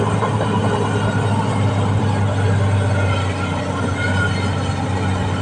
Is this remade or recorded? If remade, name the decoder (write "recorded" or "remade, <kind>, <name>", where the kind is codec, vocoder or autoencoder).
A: recorded